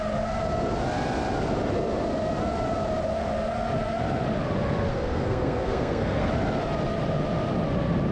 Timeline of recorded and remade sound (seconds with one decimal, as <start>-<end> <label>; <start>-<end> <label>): 0.0-4.9 recorded; 4.9-6.3 remade; 6.3-8.1 recorded